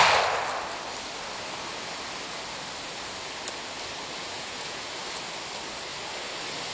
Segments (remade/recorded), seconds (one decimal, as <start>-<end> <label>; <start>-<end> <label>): 0.0-4.2 recorded; 4.2-4.9 remade; 4.9-6.7 recorded